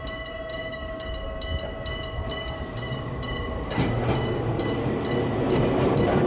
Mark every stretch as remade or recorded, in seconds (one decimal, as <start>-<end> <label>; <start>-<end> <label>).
0.0-0.5 recorded; 0.5-1.1 remade; 1.1-2.3 recorded; 2.3-4.9 remade; 4.9-6.3 recorded